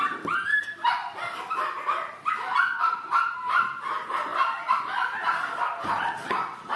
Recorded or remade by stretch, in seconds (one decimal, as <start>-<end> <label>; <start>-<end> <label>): 0.0-6.8 recorded